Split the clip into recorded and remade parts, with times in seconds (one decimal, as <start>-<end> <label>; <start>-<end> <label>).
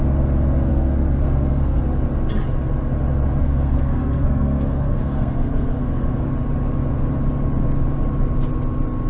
0.0-0.7 recorded; 0.7-1.8 remade; 1.8-3.4 recorded; 3.4-6.3 remade; 6.3-9.1 recorded